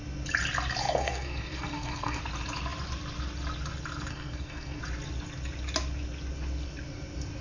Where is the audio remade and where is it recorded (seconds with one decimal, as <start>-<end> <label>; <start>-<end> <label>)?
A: 0.0-0.8 recorded; 0.8-2.2 remade; 2.2-4.1 recorded; 4.1-4.8 remade; 4.8-7.4 recorded